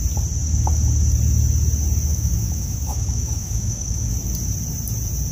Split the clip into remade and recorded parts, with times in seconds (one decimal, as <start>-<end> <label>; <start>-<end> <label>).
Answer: 0.0-2.1 recorded; 2.1-4.1 remade; 4.1-5.3 recorded